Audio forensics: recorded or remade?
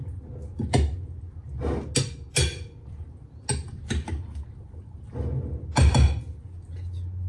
recorded